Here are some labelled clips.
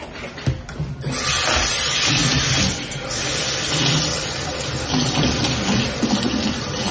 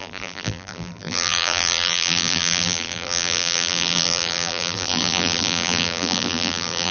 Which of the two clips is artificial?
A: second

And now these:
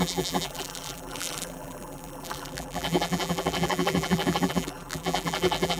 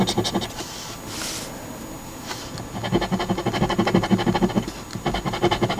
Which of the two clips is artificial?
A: first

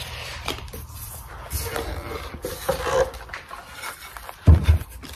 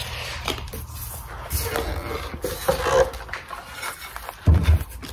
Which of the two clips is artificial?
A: first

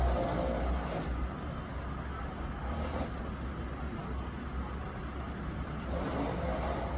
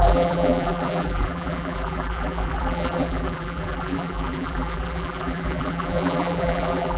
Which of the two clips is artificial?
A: second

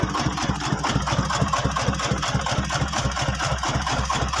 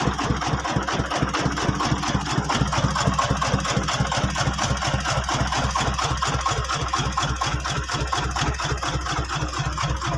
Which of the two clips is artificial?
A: first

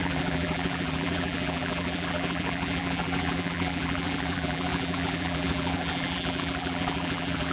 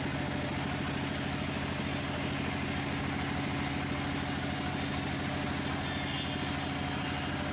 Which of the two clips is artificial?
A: first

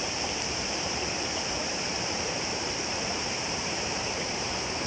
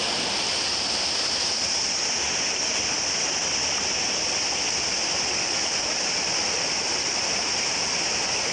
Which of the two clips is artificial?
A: first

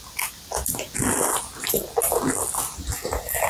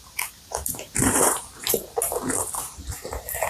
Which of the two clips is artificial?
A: second